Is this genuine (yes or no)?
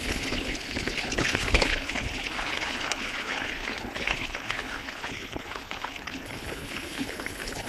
no